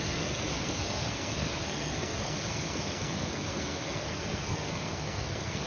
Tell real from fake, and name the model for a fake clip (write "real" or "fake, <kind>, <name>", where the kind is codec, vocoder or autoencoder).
fake, codec, SNAC